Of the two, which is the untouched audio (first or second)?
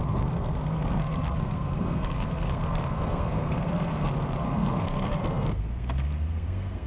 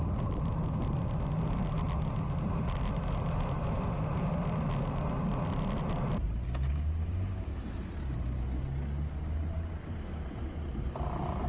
second